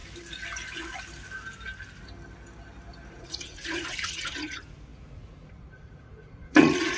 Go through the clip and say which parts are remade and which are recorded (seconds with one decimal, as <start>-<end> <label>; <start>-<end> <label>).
0.0-3.1 recorded; 3.1-7.0 remade

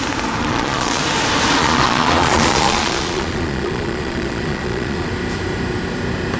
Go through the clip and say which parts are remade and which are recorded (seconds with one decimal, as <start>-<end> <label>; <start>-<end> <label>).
0.0-0.4 recorded; 0.4-1.0 remade; 1.0-1.6 recorded; 1.6-5.1 remade; 5.1-6.4 recorded

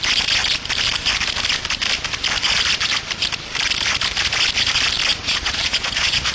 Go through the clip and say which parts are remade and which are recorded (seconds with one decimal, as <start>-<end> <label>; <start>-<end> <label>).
0.0-5.2 recorded; 5.2-6.3 remade

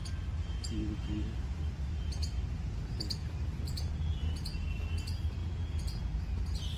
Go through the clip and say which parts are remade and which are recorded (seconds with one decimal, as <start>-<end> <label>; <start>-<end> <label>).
0.0-5.4 recorded; 5.4-6.0 remade; 6.0-6.8 recorded

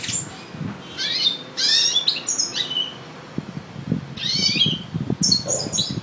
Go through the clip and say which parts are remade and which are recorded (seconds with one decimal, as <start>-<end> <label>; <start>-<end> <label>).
0.0-6.0 recorded

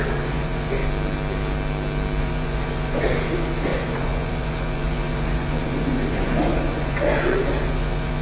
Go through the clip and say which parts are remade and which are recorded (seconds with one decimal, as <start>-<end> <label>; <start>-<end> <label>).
0.0-0.8 remade; 0.8-2.2 recorded; 2.2-8.2 remade

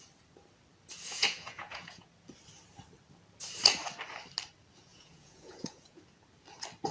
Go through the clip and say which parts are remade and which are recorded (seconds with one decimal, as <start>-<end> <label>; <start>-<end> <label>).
0.0-1.1 recorded; 1.1-2.1 remade; 2.1-4.9 recorded; 4.9-6.0 remade; 6.0-6.9 recorded

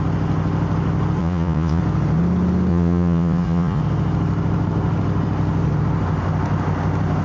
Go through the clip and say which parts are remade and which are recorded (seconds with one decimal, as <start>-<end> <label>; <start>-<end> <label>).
0.0-1.2 recorded; 1.2-1.8 remade; 1.8-2.7 recorded; 2.7-3.8 remade; 3.8-7.2 recorded